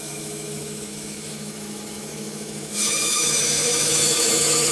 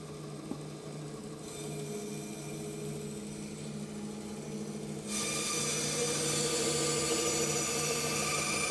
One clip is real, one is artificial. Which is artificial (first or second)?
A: first